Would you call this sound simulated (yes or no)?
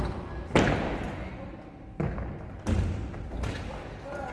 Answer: no